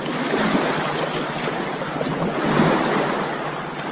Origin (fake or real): real